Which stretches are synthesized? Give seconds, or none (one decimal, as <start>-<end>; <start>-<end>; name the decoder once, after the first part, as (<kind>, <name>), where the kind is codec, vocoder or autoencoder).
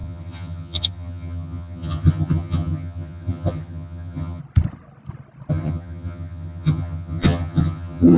0.0-4.4 (vocoder, HiFi-GAN); 5.5-8.2